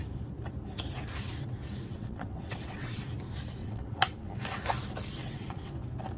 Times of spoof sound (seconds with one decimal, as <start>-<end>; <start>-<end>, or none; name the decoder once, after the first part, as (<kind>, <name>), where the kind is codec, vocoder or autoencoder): 1.9-3.0 (vocoder, WaveNeXt); 3.6-4.3; 5.2-5.7